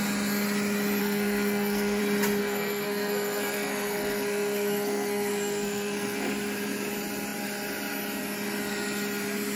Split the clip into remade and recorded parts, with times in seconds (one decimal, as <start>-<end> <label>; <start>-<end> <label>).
0.0-1.0 recorded; 1.0-2.0 remade; 2.0-2.4 recorded; 2.4-6.3 remade; 6.3-9.6 recorded